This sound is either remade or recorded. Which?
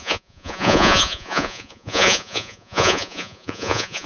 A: remade